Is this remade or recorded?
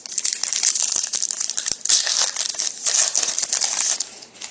recorded